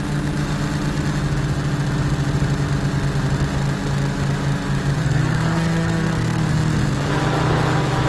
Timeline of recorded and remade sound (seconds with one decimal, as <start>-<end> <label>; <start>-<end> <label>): 0.0-5.0 recorded; 5.0-6.5 remade; 6.5-8.1 recorded